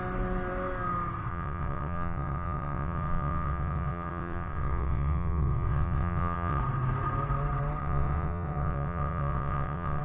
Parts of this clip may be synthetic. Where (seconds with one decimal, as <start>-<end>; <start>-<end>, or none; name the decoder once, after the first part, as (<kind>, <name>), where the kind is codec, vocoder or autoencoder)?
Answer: 1.3-6.6 (vocoder, WaveNeXt); 7.8-10.0

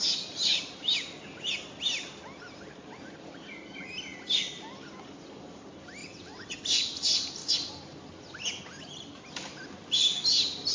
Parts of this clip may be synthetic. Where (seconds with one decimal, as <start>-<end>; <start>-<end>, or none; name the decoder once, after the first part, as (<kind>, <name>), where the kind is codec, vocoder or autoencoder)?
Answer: 6.0-6.6 (vocoder, WaveNeXt)